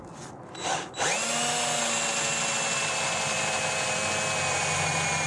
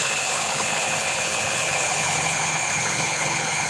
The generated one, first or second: second